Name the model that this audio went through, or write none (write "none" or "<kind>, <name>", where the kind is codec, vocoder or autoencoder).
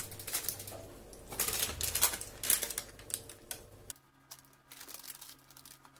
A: none